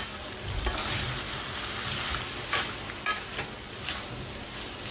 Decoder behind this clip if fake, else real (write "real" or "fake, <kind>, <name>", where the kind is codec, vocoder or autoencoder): real